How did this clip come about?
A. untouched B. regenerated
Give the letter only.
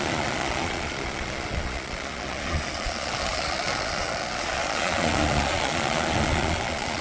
B